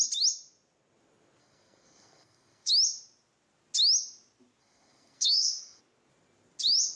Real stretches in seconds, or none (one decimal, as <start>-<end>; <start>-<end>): 0.0-1.4; 2.7-4.6; 5.8-7.0